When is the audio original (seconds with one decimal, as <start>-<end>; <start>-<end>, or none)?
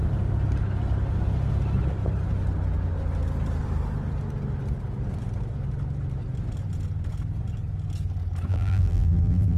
0.0-8.5